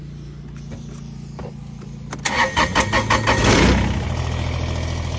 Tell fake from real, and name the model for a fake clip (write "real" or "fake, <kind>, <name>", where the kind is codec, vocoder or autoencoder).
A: real